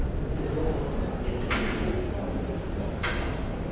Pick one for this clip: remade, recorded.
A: recorded